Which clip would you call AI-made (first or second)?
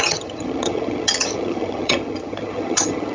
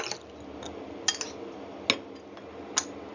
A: first